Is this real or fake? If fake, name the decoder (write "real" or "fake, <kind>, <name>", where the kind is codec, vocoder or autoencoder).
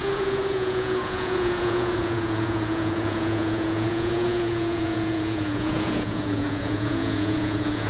fake, vocoder, Vocos